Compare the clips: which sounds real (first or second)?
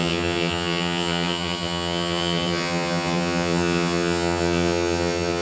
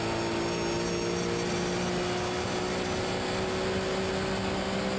second